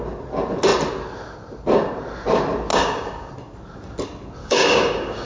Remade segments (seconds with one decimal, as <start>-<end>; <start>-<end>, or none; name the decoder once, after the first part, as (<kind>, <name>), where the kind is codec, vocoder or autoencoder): 2.7-3.3 (codec, DAC); 4.4-5.3